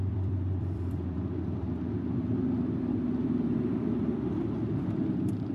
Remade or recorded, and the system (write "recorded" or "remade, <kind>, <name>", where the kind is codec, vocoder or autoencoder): remade, vocoder, BigVGAN v2